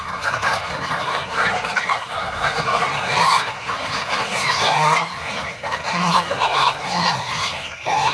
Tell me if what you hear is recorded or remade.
remade